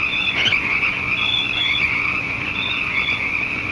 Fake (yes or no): yes